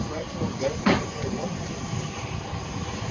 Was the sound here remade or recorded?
recorded